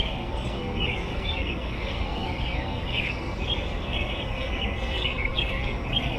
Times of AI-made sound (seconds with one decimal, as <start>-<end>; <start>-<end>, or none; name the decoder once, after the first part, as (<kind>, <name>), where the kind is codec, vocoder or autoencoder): 0.0-6.2 (codec, SNAC)